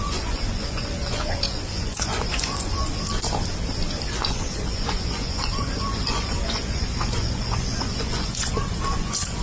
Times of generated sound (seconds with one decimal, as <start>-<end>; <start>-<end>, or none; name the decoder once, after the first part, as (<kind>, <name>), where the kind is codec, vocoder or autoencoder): 0.0-2.9 (vocoder, Vocos); 4.1-9.4